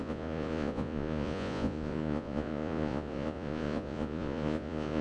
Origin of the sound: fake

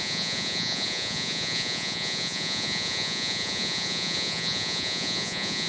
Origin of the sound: fake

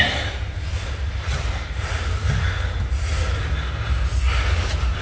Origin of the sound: real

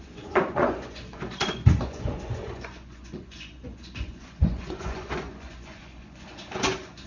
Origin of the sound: fake